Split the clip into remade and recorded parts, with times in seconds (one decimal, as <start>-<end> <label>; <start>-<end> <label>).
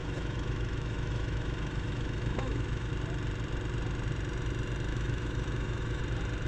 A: 0.0-2.9 remade; 2.9-4.9 recorded; 4.9-6.0 remade; 6.0-6.5 recorded